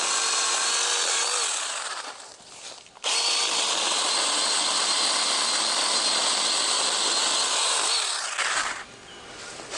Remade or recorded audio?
recorded